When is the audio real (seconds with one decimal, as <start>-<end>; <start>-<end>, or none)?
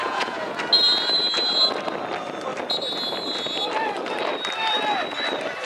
0.6-5.7